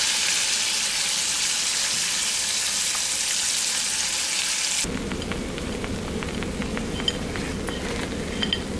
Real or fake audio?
real